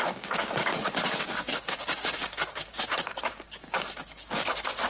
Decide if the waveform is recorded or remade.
remade